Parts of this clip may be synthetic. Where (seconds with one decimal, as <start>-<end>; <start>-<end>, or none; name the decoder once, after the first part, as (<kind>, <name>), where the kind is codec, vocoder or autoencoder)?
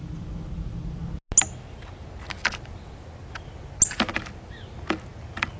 none